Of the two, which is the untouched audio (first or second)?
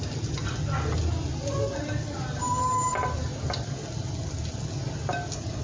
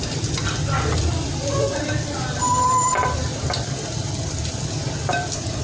first